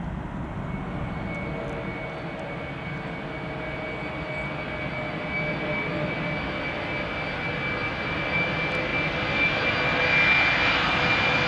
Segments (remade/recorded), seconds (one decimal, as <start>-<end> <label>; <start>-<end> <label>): 0.0-11.5 recorded